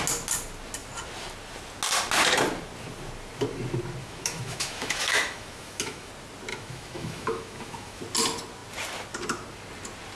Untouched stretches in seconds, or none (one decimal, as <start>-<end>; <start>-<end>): 0.0-4.0; 6.1-6.5; 8.0-10.2